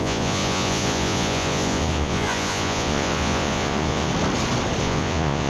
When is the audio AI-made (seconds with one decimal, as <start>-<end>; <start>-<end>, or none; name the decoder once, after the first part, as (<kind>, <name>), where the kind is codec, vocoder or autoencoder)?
0.0-4.1 (vocoder, Vocos); 4.8-5.5